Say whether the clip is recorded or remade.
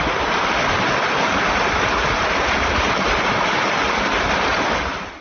recorded